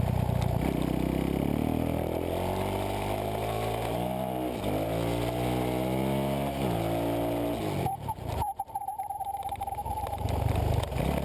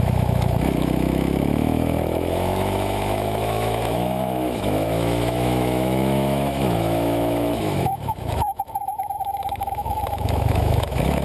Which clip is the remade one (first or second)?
second